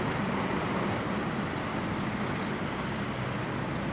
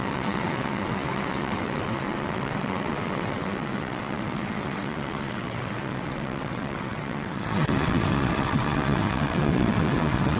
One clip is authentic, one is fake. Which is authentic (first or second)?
first